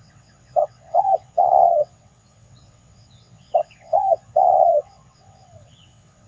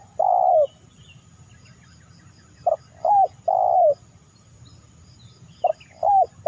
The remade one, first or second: first